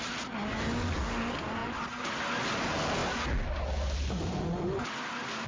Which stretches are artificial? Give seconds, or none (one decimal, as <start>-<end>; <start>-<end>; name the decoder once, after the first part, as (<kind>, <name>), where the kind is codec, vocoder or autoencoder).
none